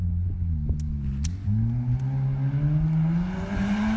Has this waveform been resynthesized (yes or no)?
no